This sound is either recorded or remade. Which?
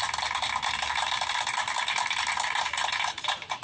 remade